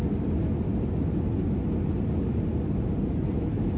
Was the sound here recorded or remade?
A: recorded